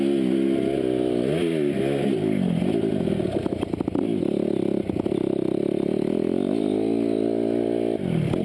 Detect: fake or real real